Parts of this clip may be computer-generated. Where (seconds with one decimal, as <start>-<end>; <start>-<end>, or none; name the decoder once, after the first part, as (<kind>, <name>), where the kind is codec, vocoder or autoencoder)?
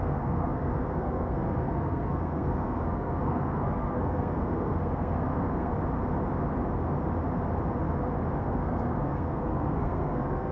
0.0-5.7 (codec, SNAC); 8.4-10.5